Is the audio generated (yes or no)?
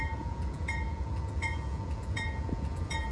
yes